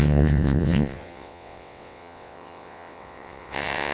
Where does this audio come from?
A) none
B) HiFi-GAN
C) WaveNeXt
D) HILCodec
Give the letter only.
C